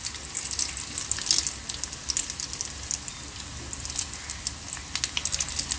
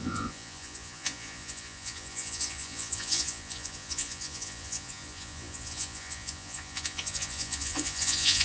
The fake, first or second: second